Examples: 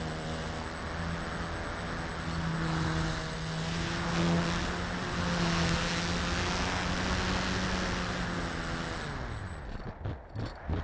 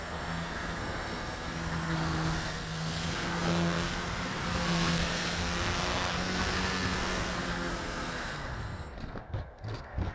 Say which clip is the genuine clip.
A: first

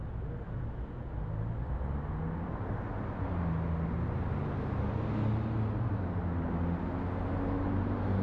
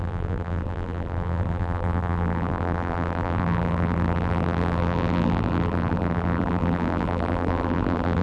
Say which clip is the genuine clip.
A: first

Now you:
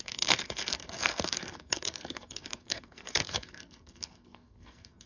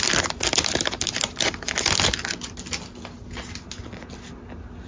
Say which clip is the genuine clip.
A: second